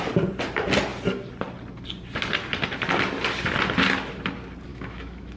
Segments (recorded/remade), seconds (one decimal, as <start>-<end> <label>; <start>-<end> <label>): 0.0-4.7 recorded; 4.7-5.4 remade